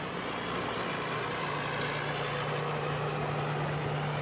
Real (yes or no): yes